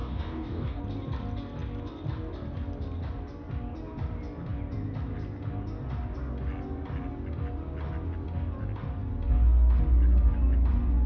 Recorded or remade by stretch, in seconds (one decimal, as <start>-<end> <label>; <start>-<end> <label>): 0.0-0.8 remade; 0.8-11.1 recorded